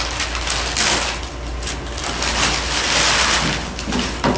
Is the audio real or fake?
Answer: real